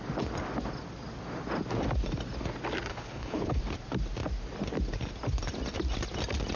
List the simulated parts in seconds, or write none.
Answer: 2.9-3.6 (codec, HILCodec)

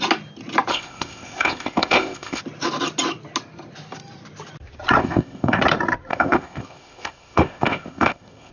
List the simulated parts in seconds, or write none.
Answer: 0.7-2.4 (codec, ZipCodec); 5.0-5.6; 6.1-8.5

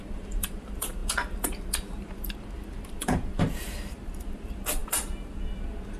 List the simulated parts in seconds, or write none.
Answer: 0.0-6.0 (vocoder, BigVGAN v2)

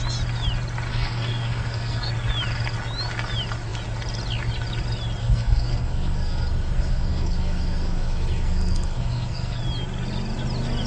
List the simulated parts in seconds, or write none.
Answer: 0.9-2.1 (codec, SNAC); 5.2-9.6

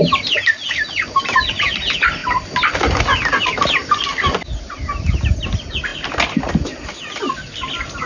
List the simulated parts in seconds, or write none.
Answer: none

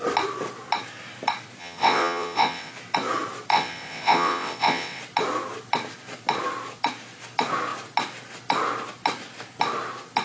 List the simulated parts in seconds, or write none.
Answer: 1.6-2.7 (vocoder, WaveNeXt); 3.5-5.0